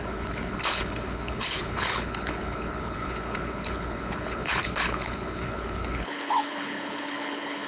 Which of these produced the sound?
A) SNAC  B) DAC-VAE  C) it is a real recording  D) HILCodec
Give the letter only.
D